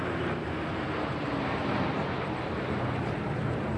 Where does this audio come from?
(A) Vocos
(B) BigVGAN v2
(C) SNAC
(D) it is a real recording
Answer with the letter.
D